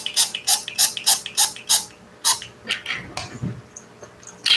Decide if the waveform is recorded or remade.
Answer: recorded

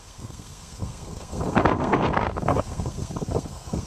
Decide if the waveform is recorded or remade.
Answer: remade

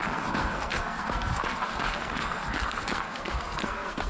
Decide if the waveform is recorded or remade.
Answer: remade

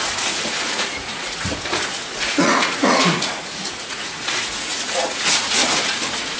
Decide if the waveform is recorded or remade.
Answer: remade